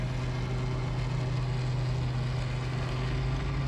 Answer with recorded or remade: recorded